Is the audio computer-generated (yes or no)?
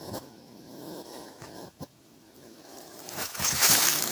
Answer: yes